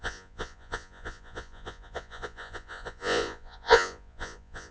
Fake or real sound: fake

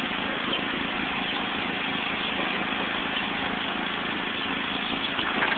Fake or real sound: real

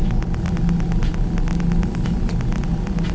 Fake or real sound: real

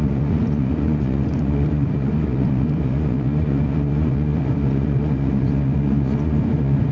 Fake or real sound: fake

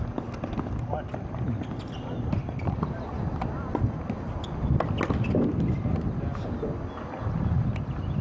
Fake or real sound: real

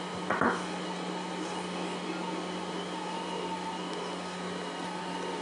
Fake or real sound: real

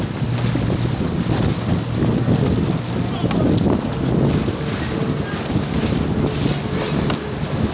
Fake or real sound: real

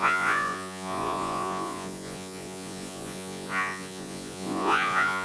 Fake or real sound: fake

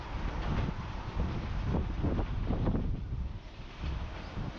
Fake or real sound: real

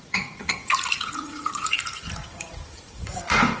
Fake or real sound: fake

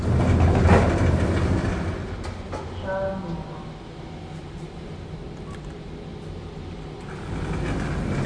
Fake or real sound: real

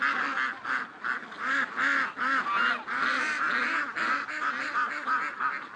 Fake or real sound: real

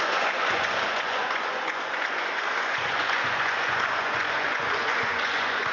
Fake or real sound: fake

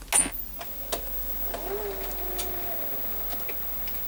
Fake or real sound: real